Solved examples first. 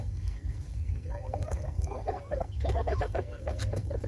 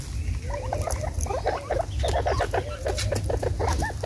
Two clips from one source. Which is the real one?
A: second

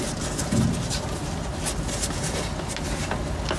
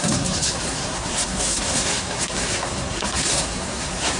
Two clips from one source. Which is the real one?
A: first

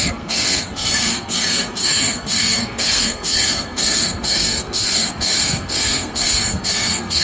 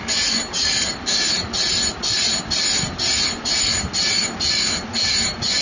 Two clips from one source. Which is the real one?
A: second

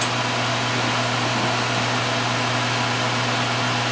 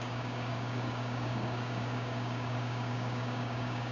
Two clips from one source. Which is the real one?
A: first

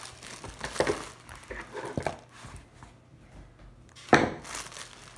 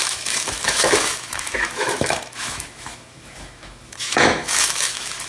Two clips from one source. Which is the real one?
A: first